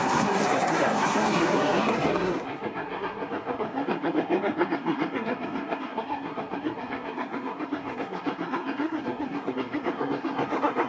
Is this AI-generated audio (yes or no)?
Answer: yes